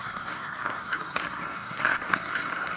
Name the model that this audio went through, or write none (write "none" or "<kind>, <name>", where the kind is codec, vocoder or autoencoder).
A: codec, SNAC